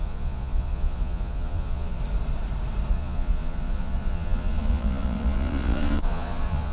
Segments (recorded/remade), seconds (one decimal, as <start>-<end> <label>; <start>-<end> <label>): 0.0-2.0 remade; 2.0-2.9 recorded; 2.9-6.7 remade